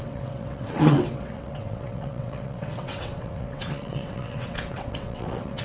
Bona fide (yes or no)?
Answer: no